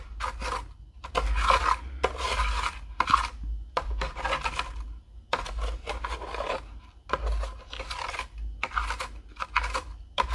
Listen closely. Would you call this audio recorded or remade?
recorded